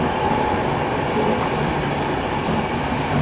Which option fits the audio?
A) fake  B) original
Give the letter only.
B